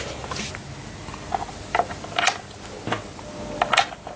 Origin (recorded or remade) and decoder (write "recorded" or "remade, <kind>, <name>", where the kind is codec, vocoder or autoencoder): recorded